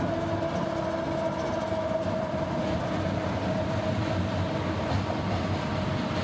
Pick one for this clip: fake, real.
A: real